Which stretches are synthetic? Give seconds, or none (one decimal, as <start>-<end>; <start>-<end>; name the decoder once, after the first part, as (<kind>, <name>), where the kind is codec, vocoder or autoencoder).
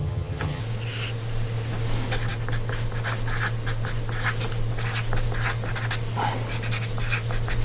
0.0-0.6 (vocoder, HiFi-GAN)